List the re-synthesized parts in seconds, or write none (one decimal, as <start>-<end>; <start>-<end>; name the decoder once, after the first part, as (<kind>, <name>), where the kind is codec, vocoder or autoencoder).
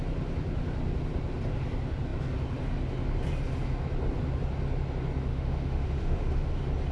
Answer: 5.3-6.5 (autoencoder, DAC-VAE)